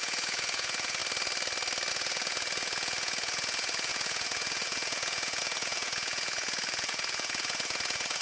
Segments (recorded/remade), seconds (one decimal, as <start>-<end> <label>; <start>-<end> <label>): 0.0-1.0 remade; 1.0-1.9 recorded; 1.9-8.2 remade